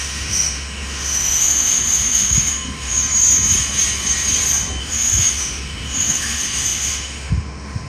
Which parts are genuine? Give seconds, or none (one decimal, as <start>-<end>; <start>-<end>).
3.0-4.8